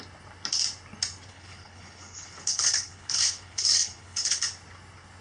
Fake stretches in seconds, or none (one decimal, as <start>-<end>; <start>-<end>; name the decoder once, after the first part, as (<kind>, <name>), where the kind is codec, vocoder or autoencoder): 1.3-4.4 (codec, HILCodec)